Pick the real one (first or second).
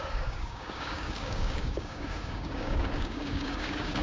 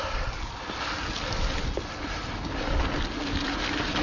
second